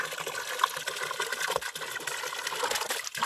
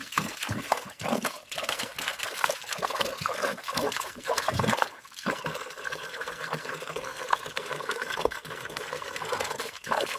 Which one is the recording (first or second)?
first